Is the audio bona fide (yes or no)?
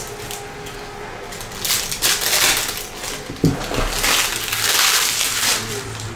yes